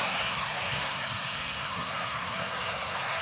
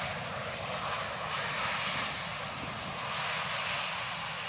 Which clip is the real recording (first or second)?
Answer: second